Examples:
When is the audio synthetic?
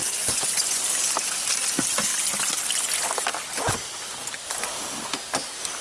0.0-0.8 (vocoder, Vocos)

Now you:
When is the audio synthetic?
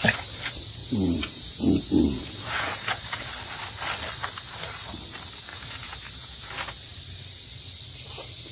0.8-3.3 (vocoder, Vocos); 5.5-6.5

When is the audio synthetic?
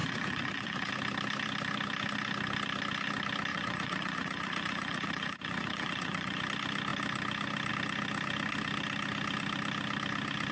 0.0-0.9 (vocoder, Vocos); 3.5-6.4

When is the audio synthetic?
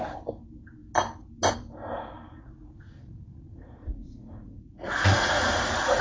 3.5-6.0 (vocoder, Vocos)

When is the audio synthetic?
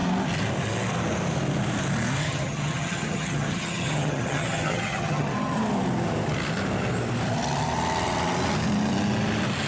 2.2-5.6 (vocoder, HiFi-GAN)